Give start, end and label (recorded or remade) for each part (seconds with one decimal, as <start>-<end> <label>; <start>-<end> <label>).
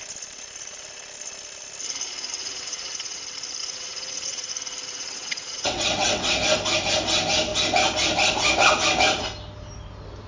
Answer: 0.0-2.4 recorded; 2.4-3.2 remade; 3.2-3.6 recorded; 3.6-4.5 remade; 4.5-4.9 recorded; 4.9-6.3 remade; 6.3-10.3 recorded